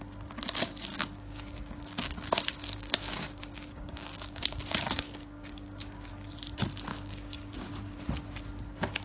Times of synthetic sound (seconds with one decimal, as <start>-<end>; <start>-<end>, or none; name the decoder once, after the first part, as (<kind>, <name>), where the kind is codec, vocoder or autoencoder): 0.9-6.1 (codec, DAC); 6.9-7.7